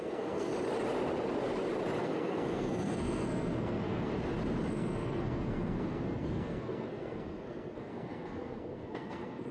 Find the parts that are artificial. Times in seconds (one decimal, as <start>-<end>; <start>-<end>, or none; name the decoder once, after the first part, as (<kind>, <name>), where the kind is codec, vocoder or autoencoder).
0.0-0.5 (codec, SNAC); 2.0-4.1; 4.7-9.5